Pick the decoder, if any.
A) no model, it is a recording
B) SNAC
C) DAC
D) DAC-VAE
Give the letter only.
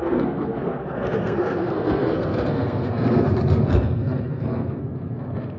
B